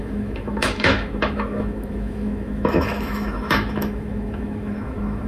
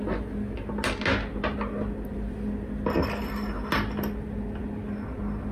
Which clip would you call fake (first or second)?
first